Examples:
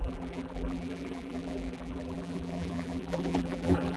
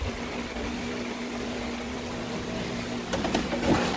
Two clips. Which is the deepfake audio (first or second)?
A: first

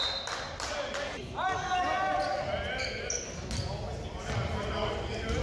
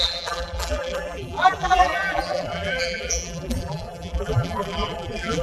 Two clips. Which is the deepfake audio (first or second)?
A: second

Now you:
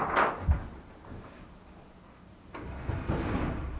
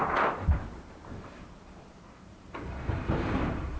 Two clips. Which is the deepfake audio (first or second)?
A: second